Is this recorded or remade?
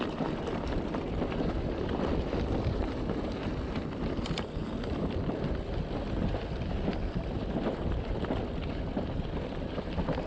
recorded